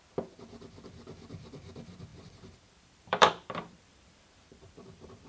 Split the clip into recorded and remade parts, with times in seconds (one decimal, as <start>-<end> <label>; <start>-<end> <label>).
0.0-2.1 recorded; 2.1-5.3 remade

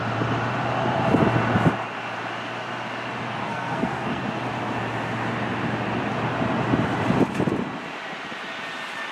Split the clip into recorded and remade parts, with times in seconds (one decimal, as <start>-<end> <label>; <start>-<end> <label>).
0.0-3.4 recorded; 3.4-4.2 remade; 4.2-9.1 recorded

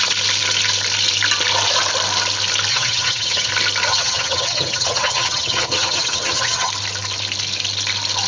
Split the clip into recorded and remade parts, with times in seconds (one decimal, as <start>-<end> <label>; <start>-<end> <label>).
0.0-2.7 recorded; 2.7-3.5 remade; 3.5-3.9 recorded; 3.9-6.7 remade; 6.7-8.3 recorded

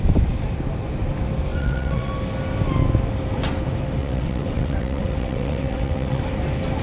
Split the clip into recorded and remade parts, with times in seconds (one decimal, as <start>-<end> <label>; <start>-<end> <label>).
0.0-1.5 recorded; 1.5-2.1 remade; 2.1-4.0 recorded; 4.0-6.2 remade; 6.2-6.8 recorded